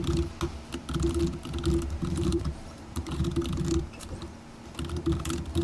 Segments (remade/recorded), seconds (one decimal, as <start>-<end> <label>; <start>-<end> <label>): 0.0-2.0 recorded; 2.0-3.3 remade; 3.3-5.6 recorded